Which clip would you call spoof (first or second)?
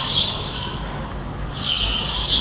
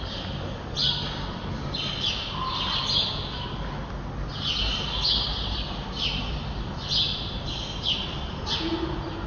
first